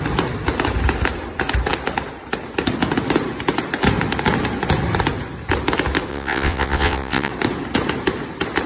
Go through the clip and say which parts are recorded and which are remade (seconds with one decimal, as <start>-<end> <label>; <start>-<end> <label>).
0.0-6.1 recorded; 6.1-7.3 remade; 7.3-8.7 recorded